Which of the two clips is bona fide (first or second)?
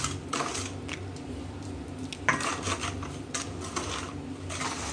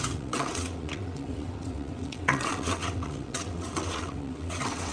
first